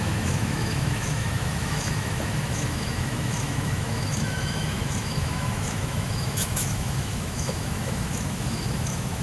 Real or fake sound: fake